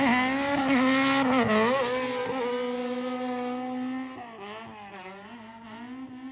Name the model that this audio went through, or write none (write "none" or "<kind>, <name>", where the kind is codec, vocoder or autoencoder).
none